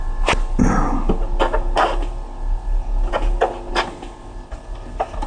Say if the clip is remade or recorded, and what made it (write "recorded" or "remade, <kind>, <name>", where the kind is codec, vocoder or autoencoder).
recorded